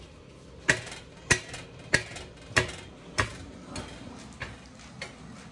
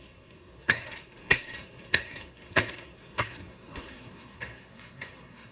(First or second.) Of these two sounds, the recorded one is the first